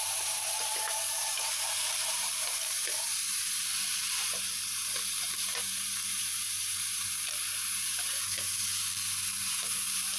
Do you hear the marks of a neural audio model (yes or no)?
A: yes